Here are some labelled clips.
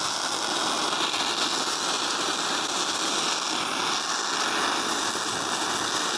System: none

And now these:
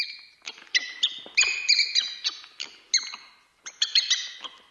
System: none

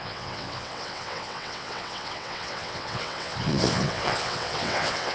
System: vocoder, WaveNeXt